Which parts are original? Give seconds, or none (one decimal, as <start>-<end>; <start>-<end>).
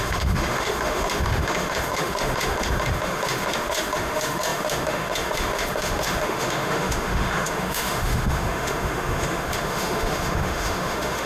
none